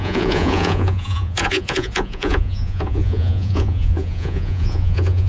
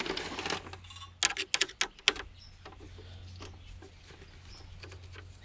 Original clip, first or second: second